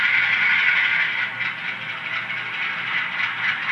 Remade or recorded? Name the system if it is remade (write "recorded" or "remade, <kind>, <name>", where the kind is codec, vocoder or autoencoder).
recorded